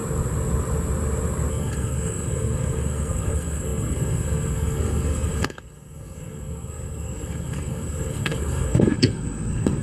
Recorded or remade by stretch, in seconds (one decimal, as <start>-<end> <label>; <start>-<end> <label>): 0.0-1.5 recorded; 1.5-9.8 remade